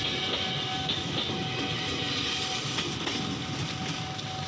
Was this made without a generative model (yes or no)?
yes